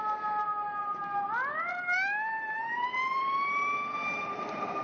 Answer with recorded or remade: remade